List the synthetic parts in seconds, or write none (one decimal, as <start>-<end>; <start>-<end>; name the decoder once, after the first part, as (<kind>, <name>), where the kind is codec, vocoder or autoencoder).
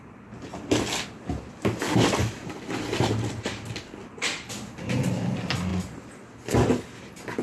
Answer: none